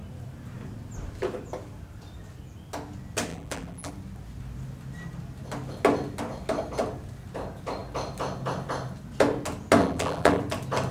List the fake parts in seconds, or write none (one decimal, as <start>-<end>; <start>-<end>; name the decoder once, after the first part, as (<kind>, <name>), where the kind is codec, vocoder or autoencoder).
3.3-3.9 (vocoder, BigVGAN v2); 9.8-10.4